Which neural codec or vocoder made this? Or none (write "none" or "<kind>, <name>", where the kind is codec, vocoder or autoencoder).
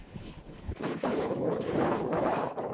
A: codec, HILCodec